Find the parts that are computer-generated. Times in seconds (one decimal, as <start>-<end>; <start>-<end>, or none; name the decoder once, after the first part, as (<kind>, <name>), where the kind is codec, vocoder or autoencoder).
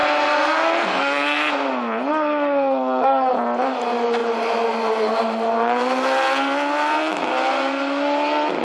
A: 0.0-1.5 (codec, SNAC); 2.1-3.3